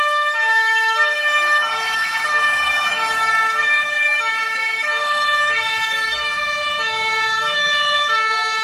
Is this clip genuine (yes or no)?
no